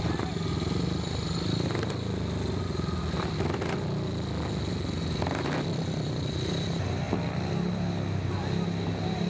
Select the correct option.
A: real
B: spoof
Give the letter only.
A